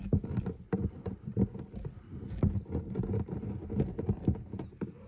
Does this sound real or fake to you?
real